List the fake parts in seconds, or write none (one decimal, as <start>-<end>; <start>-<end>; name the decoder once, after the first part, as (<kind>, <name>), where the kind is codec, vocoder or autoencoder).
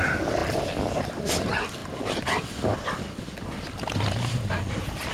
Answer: none